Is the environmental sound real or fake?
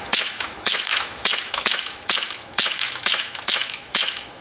fake